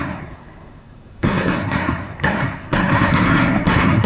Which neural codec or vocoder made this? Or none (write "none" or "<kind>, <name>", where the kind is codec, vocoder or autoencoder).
codec, SNAC